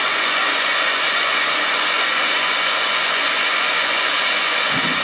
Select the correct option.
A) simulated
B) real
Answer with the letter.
A